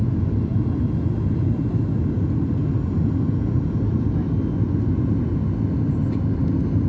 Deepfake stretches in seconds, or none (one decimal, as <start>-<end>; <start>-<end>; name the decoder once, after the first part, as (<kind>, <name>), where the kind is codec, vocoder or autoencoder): none